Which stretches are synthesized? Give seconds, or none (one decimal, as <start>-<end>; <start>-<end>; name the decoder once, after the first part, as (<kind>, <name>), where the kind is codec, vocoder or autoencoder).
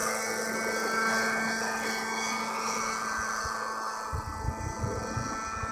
none